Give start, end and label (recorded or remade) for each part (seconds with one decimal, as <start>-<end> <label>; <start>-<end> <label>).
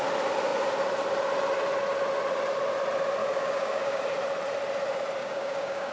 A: 0.0-3.2 recorded; 3.2-4.0 remade; 4.0-5.2 recorded; 5.2-5.9 remade